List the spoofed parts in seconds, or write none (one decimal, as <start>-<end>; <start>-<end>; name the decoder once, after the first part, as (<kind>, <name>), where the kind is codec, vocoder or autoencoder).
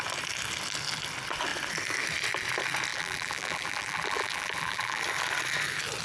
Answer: 2.9-5.0 (vocoder, BigVGAN v2)